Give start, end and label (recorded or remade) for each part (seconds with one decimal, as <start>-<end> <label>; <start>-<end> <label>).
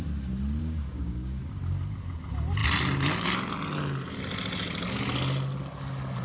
0.0-0.6 recorded; 0.6-1.4 remade; 1.4-6.2 recorded